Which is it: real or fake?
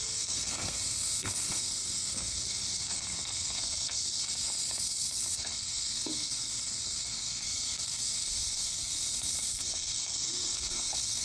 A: fake